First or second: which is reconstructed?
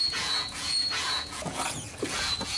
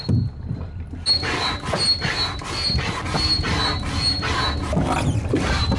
first